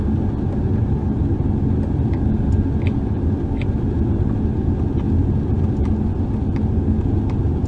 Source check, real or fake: real